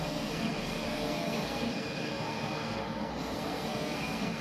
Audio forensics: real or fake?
fake